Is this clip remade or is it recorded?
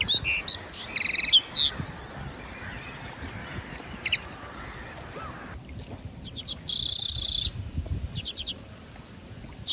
recorded